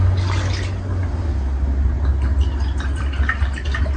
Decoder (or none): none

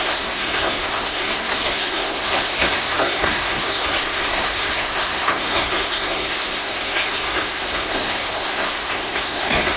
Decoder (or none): codec, SNAC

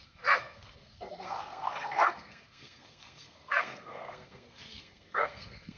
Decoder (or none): codec, SNAC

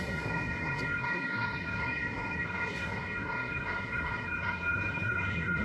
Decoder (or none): codec, SNAC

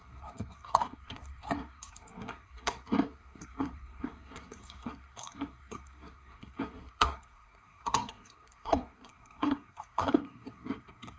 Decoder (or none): codec, SNAC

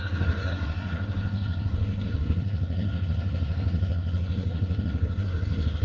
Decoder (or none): codec, SNAC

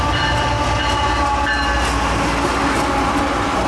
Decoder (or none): none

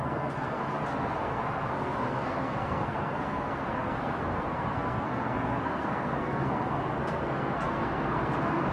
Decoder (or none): codec, SNAC